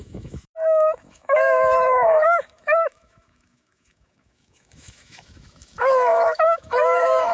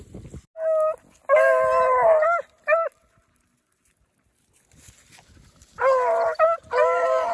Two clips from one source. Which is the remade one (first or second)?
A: first